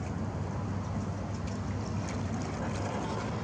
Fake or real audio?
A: real